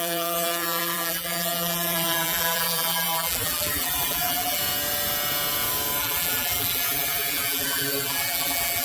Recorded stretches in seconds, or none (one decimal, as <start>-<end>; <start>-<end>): 4.6-6.0